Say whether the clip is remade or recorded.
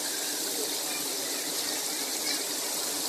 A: recorded